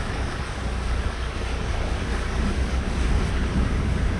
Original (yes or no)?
no